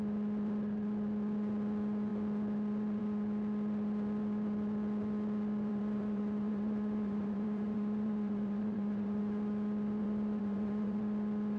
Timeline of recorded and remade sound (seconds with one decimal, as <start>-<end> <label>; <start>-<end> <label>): 0.0-5.7 recorded; 5.7-9.2 remade; 9.2-10.0 recorded; 10.0-11.0 remade; 11.0-11.6 recorded